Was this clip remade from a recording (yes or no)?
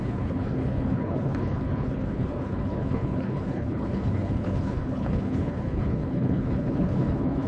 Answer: yes